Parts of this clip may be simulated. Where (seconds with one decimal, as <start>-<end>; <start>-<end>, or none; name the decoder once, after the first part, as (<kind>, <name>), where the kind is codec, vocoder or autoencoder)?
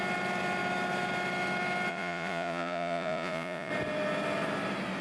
1.9-3.7 (vocoder, Vocos)